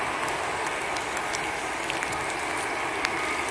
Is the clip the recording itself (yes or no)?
yes